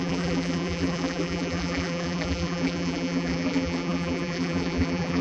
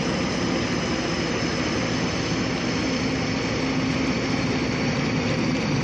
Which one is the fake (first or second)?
first